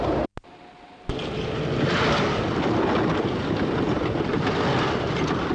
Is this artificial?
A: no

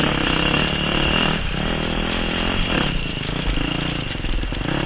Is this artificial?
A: yes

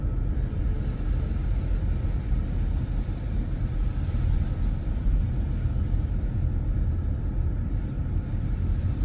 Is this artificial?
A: no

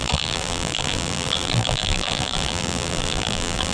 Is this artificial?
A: yes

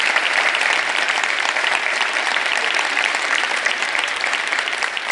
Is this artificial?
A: yes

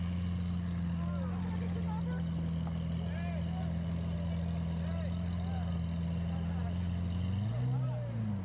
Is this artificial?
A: no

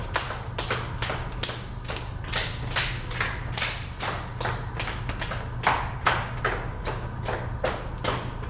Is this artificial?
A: no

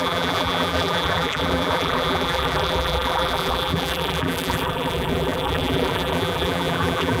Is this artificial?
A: yes